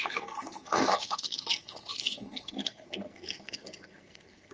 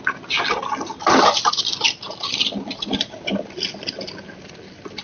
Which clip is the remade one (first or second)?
first